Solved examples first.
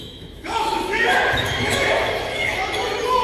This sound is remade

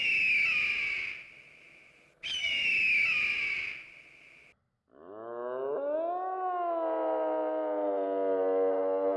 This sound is recorded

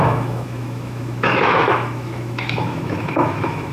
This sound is remade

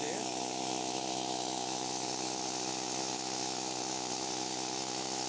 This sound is remade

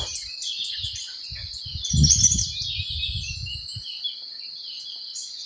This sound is recorded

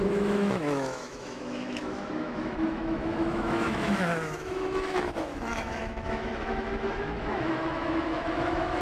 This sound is remade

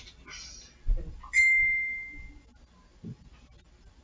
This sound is recorded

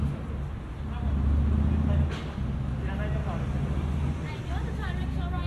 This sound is recorded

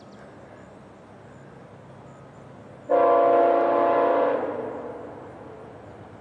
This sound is recorded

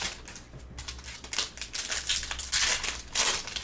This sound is recorded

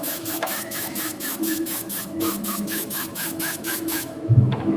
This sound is remade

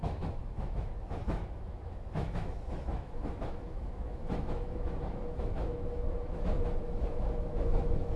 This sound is remade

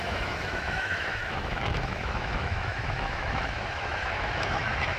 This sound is remade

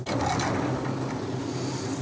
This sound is recorded